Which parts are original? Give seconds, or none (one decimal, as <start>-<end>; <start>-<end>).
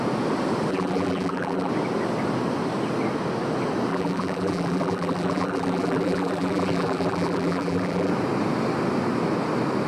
0.0-0.7; 1.7-3.9; 8.1-9.9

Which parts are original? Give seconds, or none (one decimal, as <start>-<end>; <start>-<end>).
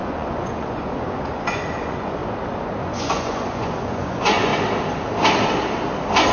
2.2-2.8; 4.5-6.3